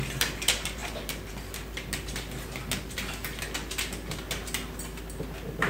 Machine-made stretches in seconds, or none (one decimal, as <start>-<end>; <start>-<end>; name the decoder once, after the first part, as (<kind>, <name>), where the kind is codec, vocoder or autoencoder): none